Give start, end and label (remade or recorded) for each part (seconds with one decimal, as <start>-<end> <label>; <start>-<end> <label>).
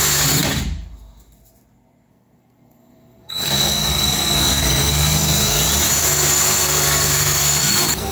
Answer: 0.0-2.1 recorded; 2.1-5.6 remade; 5.6-6.0 recorded; 6.0-8.1 remade